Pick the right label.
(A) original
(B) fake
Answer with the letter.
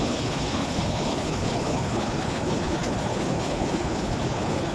B